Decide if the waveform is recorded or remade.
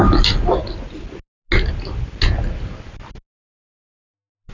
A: recorded